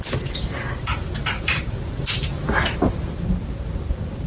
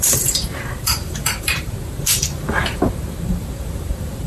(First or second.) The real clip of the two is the first